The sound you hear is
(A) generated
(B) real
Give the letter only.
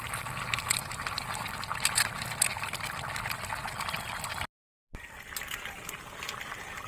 B